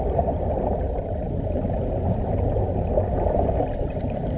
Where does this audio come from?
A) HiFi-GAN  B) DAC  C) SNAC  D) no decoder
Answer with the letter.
D